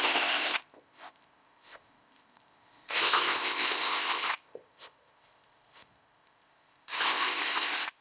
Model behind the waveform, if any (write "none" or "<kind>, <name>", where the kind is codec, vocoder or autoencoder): codec, ZipCodec